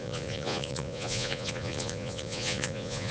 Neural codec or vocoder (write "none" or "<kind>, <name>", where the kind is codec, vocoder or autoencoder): vocoder, Vocos